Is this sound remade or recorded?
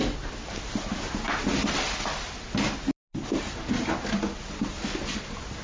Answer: recorded